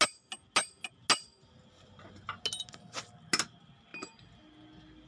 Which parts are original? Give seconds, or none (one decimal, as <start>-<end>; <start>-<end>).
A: 0.0-5.1